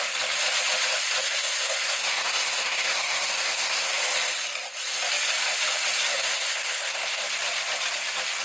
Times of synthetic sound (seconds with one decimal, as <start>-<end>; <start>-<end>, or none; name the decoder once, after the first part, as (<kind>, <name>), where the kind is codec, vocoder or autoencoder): 1.2-4.0 (codec, SNAC); 6.1-7.2